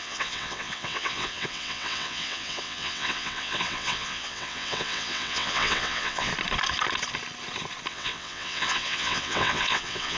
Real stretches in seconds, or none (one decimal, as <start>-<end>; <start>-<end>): 6.3-7.9